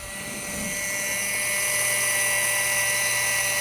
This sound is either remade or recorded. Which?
recorded